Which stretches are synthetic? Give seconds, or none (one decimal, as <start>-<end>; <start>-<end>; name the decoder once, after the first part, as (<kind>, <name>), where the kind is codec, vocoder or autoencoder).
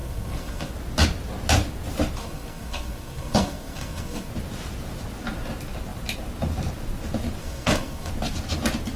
0.0-0.7 (codec, SNAC); 2.2-4.3; 7.4-8.1